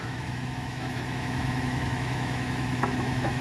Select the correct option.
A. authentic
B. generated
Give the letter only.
B